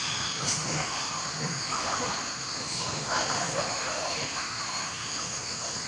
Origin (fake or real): fake